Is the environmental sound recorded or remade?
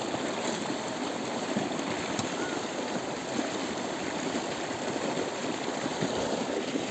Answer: recorded